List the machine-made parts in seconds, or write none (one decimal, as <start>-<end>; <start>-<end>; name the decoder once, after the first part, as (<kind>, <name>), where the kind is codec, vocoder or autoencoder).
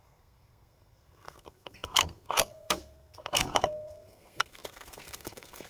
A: 0.0-5.7 (codec, SNAC)